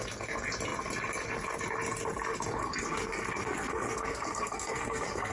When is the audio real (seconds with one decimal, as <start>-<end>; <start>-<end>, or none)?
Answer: 0.0-2.8